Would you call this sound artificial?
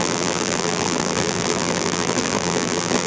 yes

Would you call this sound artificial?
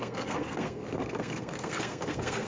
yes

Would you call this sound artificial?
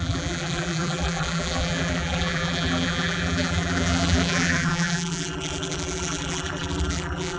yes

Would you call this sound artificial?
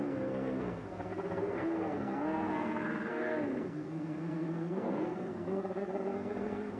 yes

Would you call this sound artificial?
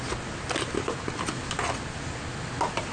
no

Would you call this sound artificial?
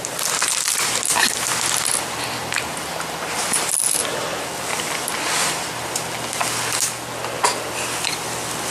no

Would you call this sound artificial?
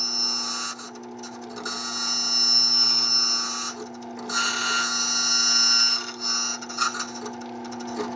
no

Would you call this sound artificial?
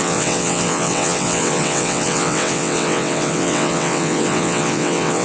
yes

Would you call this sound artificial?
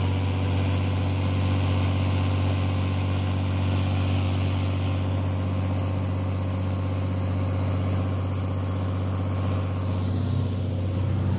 no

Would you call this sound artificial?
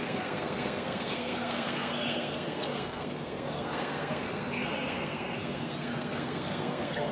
yes